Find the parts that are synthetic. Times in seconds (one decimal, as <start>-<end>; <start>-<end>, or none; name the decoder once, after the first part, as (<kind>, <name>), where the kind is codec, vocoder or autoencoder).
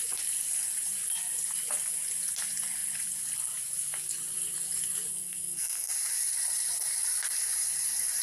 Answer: 5.1-5.9 (codec, SNAC)